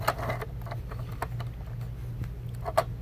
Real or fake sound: real